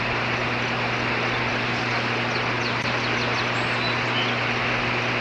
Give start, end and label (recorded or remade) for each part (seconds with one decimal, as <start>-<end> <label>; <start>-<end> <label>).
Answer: 0.0-5.2 recorded